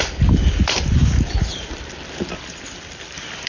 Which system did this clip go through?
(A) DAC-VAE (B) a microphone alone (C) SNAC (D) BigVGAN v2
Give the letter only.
D